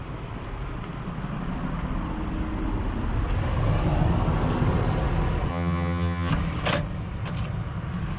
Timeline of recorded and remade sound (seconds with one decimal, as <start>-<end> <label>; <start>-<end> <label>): 0.0-5.5 recorded; 5.5-6.3 remade; 6.3-8.2 recorded